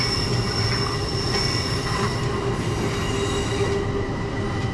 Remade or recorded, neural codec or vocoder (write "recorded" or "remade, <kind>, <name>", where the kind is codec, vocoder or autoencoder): recorded